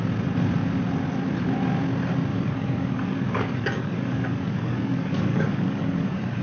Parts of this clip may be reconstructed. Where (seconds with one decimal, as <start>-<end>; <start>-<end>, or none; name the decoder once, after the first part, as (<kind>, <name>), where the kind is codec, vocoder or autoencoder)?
2.3-6.4 (codec, DAC)